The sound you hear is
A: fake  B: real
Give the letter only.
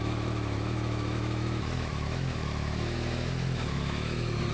A